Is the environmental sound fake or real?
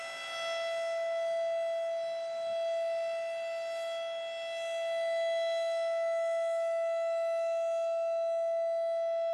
real